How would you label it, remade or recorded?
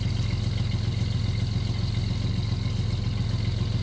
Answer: recorded